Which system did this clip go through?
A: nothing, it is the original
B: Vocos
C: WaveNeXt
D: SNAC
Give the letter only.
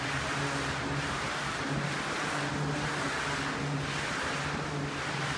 A